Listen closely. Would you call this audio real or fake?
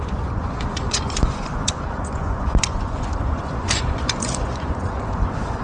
fake